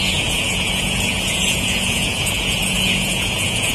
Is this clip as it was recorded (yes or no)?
no